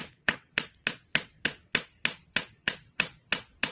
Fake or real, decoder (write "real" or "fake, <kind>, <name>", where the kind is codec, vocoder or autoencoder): fake, vocoder, WaveNeXt